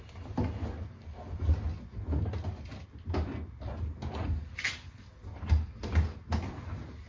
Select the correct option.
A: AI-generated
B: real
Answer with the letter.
B